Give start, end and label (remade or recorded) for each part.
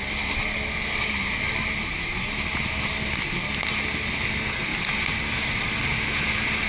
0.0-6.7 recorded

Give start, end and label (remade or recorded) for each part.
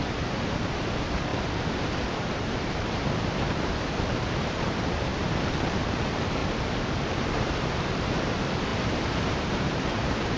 0.0-6.4 remade; 6.4-7.1 recorded; 7.1-10.4 remade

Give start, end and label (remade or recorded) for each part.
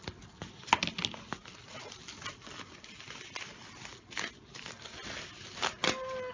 0.0-6.3 recorded